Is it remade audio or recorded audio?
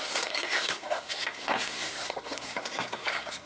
remade